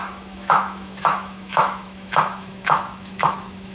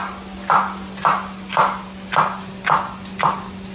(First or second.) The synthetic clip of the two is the first